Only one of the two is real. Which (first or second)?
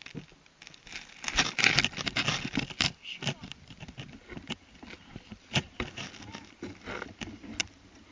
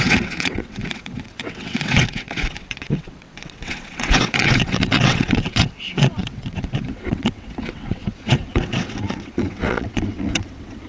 first